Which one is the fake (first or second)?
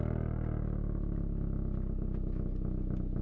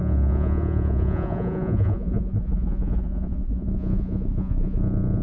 second